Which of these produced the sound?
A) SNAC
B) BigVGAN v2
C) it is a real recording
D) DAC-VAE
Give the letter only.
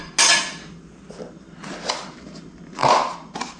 C